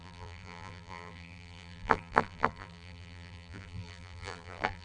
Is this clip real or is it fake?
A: fake